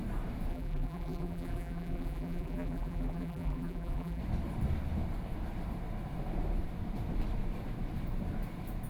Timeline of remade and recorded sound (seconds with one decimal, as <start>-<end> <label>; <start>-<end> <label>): 0.0-0.5 recorded; 0.5-4.2 remade; 4.2-8.9 recorded